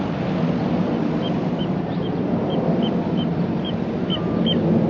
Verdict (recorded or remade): recorded